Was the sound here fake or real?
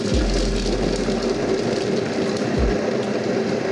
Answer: real